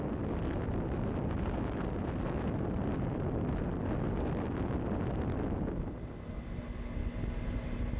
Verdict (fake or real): real